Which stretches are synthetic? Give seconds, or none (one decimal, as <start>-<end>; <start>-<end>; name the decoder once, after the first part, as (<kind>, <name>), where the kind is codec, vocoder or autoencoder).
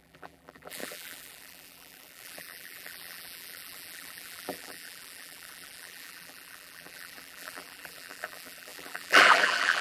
0.0-9.8 (vocoder, BigVGAN v2)